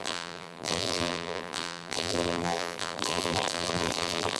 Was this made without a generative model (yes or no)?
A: no